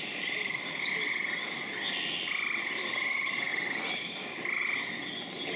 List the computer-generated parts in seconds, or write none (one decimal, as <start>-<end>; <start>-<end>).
none